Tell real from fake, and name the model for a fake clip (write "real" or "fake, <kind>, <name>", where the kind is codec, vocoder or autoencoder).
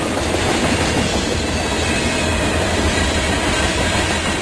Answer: real